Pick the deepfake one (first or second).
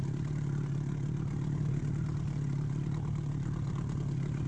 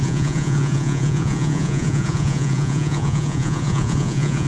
second